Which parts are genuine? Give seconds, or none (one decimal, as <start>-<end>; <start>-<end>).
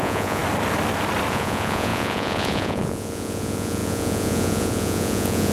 0.4-1.3